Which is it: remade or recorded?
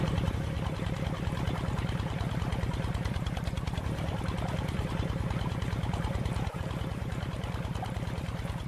remade